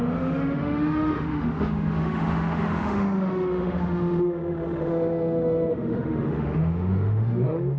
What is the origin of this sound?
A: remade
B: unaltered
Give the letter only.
A